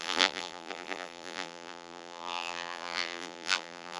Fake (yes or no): yes